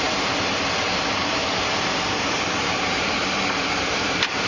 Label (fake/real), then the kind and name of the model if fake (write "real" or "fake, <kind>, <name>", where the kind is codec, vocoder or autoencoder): fake, vocoder, BigVGAN v2